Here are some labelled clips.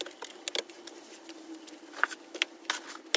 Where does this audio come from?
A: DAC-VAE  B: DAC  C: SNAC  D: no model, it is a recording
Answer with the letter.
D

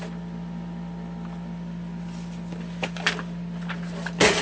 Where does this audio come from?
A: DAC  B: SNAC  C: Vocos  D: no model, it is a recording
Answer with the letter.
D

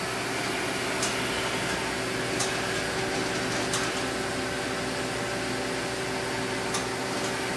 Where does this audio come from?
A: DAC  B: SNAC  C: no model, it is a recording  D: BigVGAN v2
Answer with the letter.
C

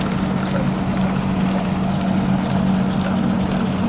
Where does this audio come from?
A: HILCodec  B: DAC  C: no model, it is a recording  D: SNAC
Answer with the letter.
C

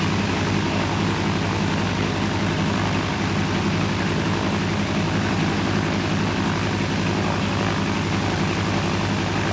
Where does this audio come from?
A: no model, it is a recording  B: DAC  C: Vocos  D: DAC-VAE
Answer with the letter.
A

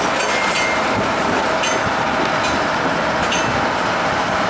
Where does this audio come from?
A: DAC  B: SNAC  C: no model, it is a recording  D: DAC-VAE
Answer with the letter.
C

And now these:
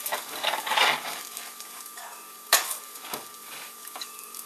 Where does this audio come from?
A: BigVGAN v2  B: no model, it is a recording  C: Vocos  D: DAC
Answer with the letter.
D